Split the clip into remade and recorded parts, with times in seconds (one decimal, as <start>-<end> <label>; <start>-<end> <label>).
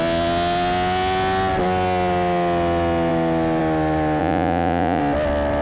0.0-4.2 recorded; 4.2-5.0 remade; 5.0-5.6 recorded